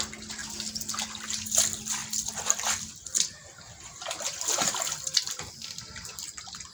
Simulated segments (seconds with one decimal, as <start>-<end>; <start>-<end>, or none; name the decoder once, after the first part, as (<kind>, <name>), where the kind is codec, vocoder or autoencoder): 0.0-0.4 (vocoder, BigVGAN v2); 1.0-2.0; 2.8-6.7